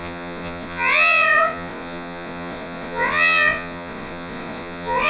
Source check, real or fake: fake